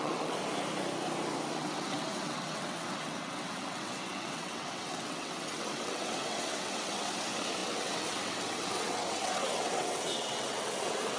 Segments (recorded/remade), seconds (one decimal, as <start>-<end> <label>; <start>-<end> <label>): 0.0-0.4 remade; 0.4-1.5 recorded; 1.5-11.2 remade